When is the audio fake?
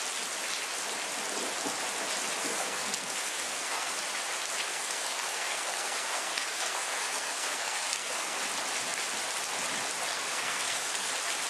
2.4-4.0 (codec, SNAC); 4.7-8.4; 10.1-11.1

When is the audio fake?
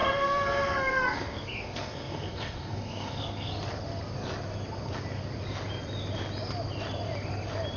0.0-3.5 (codec, SNAC)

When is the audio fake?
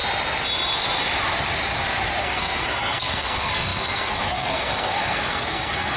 2.2-6.0 (codec, SNAC)